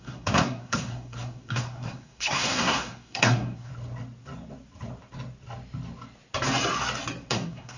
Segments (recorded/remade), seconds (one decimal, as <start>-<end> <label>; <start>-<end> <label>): 0.0-3.7 remade; 3.7-7.3 recorded; 7.3-7.8 remade